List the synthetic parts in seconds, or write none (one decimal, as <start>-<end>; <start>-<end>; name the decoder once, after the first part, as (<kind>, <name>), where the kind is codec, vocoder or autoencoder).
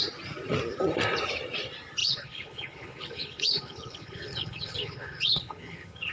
2.0-6.1 (codec, HILCodec)